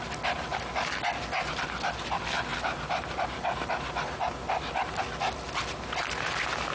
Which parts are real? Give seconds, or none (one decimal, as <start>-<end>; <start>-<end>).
0.0-2.5; 3.2-6.7